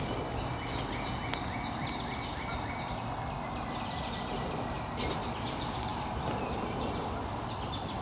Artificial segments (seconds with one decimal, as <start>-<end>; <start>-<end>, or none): none